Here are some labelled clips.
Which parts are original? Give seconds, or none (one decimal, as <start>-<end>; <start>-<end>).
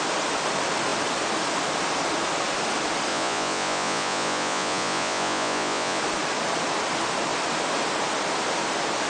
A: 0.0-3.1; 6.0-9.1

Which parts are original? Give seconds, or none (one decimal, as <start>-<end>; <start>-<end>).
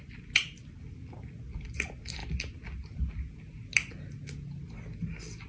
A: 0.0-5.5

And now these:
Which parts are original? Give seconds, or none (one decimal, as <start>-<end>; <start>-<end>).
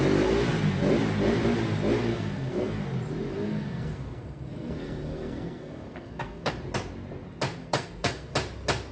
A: 0.0-2.1; 2.8-3.3; 6.5-7.6; 8.3-8.9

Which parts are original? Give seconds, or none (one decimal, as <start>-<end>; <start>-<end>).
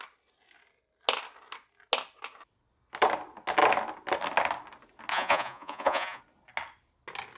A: 0.0-5.1; 6.2-7.4